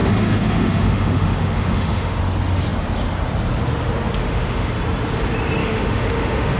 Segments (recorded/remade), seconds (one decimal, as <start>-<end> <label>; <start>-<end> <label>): 0.0-2.2 remade; 2.2-4.2 recorded; 4.2-4.7 remade; 4.7-5.6 recorded; 5.6-6.6 remade